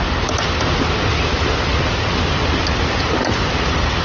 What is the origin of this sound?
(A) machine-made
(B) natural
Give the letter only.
B